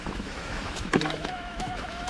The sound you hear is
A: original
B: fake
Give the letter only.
B